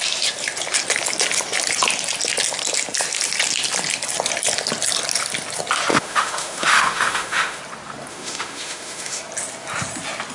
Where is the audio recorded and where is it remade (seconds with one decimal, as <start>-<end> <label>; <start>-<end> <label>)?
0.0-5.9 recorded; 5.9-7.6 remade; 7.6-8.1 recorded; 8.1-9.2 remade; 9.2-10.3 recorded